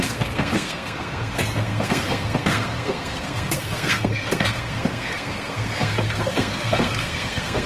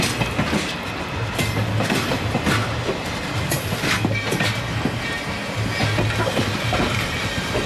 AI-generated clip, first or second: first